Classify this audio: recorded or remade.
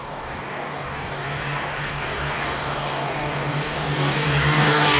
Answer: remade